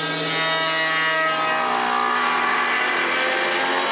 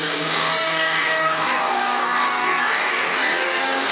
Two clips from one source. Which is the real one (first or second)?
first